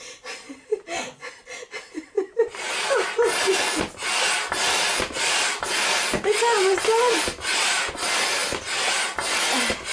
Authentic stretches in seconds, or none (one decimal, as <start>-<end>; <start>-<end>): 0.0-9.9